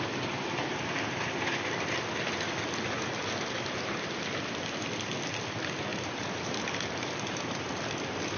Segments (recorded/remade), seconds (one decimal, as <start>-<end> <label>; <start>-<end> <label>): 0.0-5.9 recorded; 5.9-7.7 remade; 7.7-8.4 recorded